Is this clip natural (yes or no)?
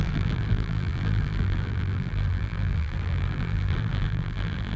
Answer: no